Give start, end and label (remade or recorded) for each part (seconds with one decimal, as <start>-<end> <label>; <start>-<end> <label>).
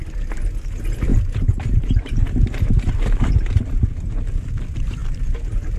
0.0-1.1 recorded; 1.1-4.6 remade; 4.6-5.0 recorded; 5.0-5.8 remade